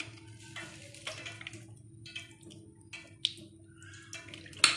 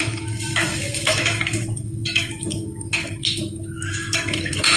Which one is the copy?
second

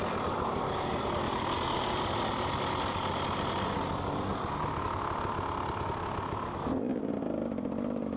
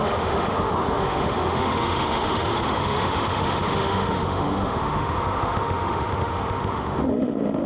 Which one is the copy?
second